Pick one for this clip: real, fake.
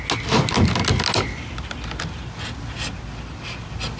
real